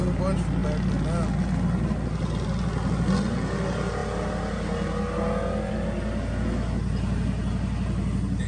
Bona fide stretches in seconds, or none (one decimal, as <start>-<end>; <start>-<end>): 0.0-8.5